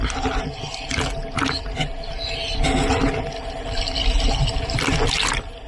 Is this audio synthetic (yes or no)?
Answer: no